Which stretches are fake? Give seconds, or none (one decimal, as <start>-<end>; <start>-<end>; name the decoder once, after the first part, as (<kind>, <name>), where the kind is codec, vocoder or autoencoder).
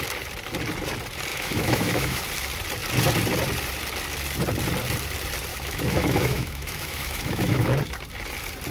1.3-2.2 (autoencoder, DAC-VAE); 5.5-7.8